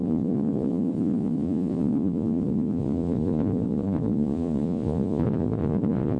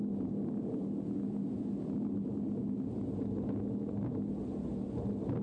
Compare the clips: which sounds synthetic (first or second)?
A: first